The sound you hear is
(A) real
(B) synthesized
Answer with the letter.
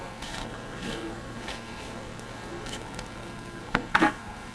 B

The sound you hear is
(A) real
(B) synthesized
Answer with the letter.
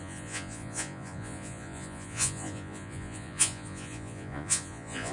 B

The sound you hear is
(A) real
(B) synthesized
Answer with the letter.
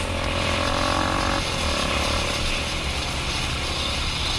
A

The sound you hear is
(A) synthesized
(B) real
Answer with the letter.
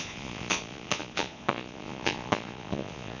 A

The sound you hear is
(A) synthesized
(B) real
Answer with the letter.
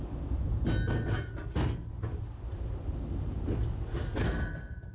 B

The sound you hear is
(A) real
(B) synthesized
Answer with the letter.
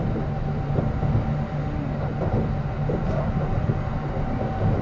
A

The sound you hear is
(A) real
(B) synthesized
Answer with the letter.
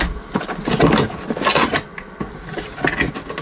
A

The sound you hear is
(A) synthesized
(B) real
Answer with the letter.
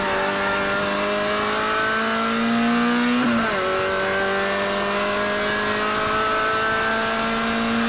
B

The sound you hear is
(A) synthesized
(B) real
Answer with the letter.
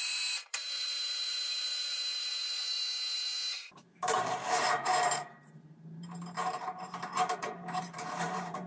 A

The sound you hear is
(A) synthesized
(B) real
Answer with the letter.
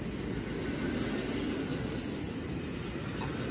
B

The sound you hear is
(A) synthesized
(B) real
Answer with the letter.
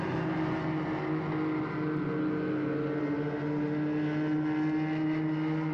B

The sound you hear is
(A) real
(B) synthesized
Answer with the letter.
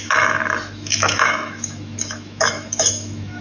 B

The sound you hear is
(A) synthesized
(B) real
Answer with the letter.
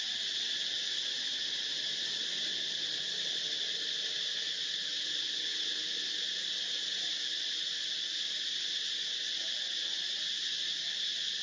B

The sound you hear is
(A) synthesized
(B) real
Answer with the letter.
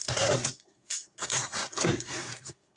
A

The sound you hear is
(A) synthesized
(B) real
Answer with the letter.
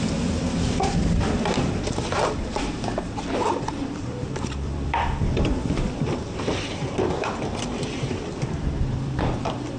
A